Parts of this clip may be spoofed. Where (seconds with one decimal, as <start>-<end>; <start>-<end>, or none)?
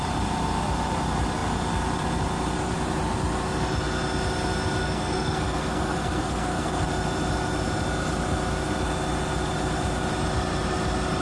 4.8-6.9